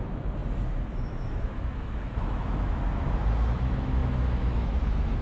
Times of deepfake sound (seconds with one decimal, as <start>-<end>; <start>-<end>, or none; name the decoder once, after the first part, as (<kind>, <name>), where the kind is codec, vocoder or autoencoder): 0.0-5.2 (autoencoder, DAC-VAE)